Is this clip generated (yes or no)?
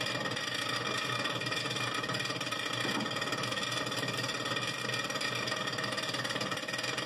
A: no